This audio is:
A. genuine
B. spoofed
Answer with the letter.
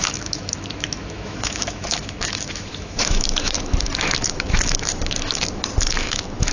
B